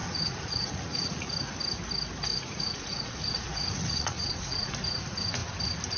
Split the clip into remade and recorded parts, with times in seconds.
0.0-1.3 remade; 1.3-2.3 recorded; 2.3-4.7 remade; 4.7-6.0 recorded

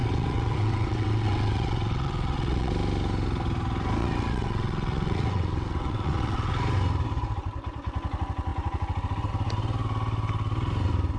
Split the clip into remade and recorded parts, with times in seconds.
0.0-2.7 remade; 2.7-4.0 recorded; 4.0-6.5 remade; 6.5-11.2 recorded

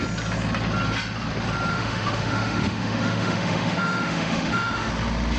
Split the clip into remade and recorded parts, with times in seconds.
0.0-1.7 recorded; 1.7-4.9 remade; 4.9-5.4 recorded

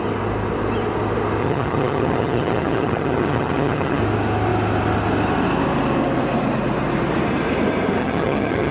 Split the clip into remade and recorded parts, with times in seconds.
0.0-1.4 recorded; 1.4-4.0 remade; 4.0-8.0 recorded; 8.0-8.7 remade